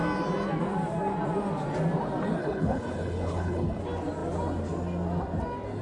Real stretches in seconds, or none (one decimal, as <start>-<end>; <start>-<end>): 0.0-2.4; 3.8-5.8